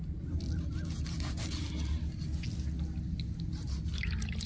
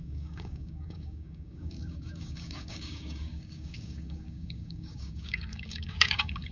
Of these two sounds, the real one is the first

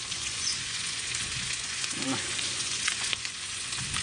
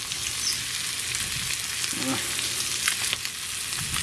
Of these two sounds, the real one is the second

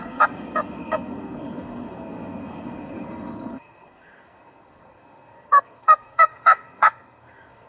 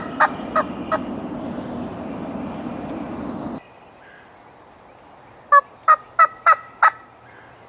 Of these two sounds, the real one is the second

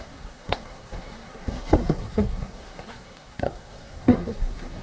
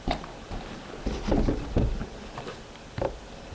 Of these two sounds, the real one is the second